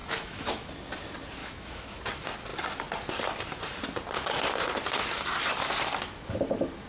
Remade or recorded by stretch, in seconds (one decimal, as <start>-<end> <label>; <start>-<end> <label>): 0.0-0.7 remade; 0.7-1.4 recorded; 1.4-2.0 remade; 2.0-6.9 recorded